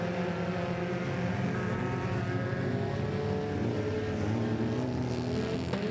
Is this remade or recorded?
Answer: recorded